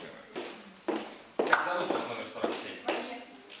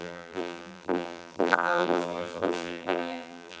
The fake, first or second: second